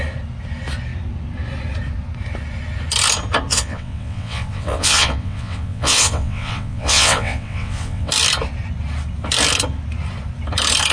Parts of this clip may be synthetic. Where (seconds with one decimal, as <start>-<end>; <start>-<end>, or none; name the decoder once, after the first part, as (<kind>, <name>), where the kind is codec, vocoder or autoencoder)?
3.5-8.1 (vocoder, WaveNeXt)